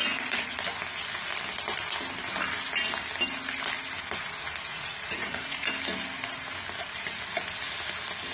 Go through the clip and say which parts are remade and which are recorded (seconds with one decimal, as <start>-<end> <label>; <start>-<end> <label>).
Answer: 0.0-0.6 remade; 0.6-4.7 recorded; 4.7-5.7 remade; 5.7-8.3 recorded